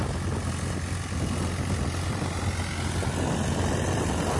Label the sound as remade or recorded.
recorded